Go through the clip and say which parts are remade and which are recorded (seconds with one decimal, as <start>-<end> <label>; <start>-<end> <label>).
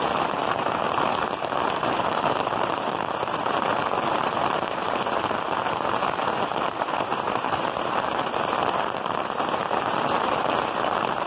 0.0-11.3 remade